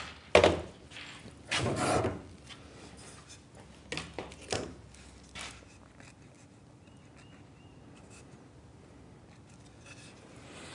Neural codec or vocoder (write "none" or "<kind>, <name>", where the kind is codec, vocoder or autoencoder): none